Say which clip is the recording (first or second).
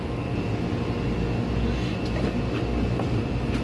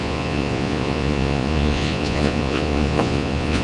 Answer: first